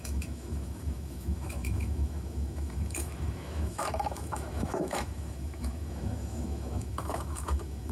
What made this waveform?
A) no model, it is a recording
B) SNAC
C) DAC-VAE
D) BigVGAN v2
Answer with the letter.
C